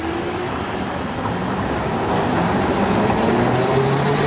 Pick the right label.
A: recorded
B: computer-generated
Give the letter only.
A